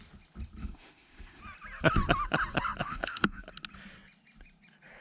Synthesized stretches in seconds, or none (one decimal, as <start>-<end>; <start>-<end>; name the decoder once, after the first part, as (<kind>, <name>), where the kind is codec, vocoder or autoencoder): 0.6-1.4 (autoencoder, DAC-VAE); 2.8-3.4